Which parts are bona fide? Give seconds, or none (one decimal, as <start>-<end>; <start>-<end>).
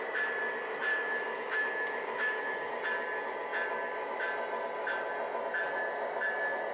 0.0-0.9; 2.7-6.7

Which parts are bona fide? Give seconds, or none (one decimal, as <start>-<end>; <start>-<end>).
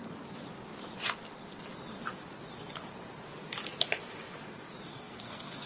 0.0-4.9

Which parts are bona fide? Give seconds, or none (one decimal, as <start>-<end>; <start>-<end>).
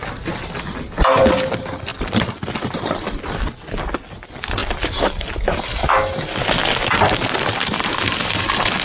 0.0-8.8